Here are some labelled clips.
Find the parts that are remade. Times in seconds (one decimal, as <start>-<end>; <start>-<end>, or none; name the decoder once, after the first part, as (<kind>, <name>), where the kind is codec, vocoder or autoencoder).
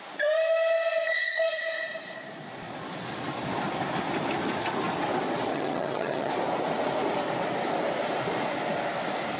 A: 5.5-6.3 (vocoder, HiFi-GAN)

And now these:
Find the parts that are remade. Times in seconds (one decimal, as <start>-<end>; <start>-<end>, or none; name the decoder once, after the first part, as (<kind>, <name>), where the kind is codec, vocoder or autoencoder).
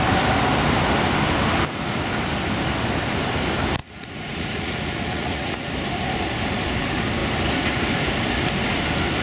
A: 3.8-5.7 (vocoder, Vocos)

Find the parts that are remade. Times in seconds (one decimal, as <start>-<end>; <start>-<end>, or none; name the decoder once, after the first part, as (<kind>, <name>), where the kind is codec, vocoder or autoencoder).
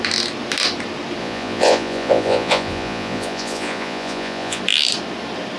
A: 1.2-4.6 (vocoder, Vocos)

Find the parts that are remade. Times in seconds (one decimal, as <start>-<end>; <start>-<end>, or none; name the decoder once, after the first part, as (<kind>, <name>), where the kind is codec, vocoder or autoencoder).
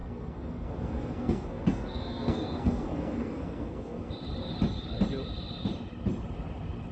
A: 0.0-4.1 (codec, SNAC)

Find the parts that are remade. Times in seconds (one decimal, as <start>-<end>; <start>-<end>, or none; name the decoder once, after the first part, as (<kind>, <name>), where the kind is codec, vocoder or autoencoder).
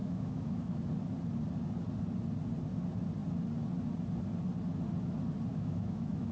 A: 0.0-0.8 (autoencoder, DAC-VAE); 5.5-6.3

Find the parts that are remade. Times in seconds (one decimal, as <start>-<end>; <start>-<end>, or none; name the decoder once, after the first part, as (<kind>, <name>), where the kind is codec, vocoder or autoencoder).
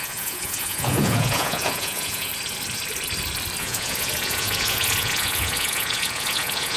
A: 0.0-2.3 (vocoder, Vocos); 3.6-6.8